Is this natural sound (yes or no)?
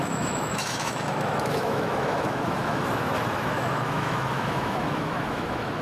no